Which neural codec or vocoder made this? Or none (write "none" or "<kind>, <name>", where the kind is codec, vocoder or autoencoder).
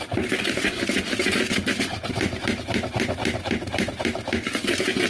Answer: none